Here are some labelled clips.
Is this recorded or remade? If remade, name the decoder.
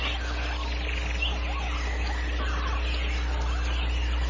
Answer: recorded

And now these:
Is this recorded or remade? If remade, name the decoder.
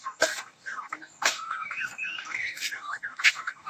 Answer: remade, codec, DAC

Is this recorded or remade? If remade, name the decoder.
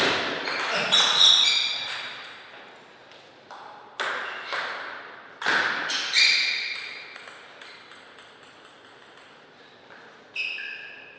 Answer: recorded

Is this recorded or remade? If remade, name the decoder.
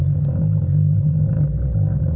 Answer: recorded